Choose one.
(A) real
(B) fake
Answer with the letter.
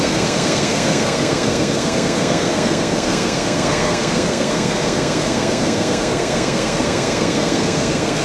B